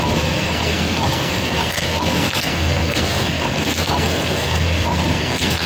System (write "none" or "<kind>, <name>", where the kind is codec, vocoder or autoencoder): codec, SNAC